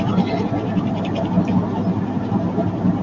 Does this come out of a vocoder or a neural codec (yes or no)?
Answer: no